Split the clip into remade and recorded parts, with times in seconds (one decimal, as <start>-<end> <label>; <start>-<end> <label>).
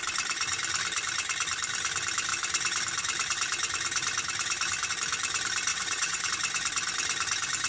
0.0-5.7 recorded; 5.7-6.3 remade; 6.3-7.7 recorded